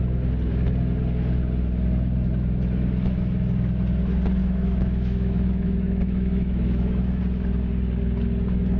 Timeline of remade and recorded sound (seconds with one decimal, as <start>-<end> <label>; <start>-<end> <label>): 0.0-4.4 recorded; 4.4-7.2 remade; 7.2-8.8 recorded